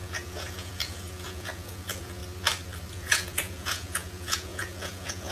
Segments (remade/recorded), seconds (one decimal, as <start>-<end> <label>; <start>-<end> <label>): 0.0-2.2 remade; 2.2-2.9 recorded; 2.9-5.3 remade